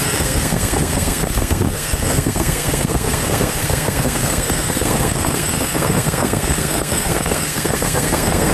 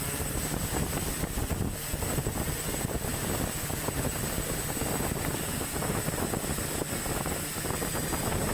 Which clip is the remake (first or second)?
first